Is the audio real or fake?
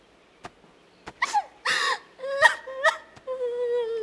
real